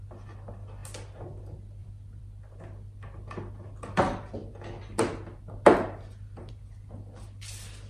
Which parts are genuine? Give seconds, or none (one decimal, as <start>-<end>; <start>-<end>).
0.0-1.8; 2.4-7.9

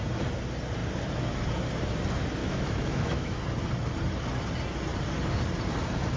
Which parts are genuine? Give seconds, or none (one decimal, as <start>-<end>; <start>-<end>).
0.0-2.4; 3.4-6.2

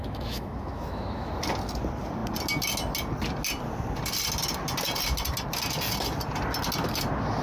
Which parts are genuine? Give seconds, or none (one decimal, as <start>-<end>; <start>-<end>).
1.3-7.4

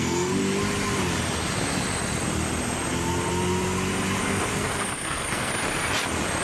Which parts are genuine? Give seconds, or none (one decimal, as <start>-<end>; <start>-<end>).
0.4-4.2; 5.5-6.4

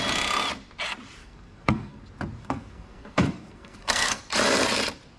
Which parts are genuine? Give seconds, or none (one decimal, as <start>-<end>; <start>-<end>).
0.0-1.2; 2.0-2.4; 4.2-5.2

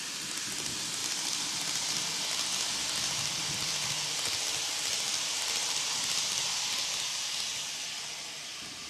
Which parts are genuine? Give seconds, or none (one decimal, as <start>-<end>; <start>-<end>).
0.0-8.9

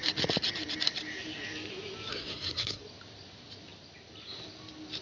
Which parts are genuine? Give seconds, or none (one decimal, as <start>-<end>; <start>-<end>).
0.0-2.1; 2.8-5.0